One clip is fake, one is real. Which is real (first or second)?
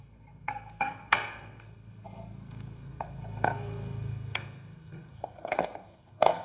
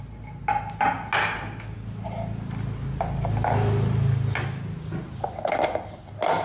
second